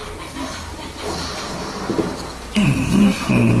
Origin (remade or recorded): recorded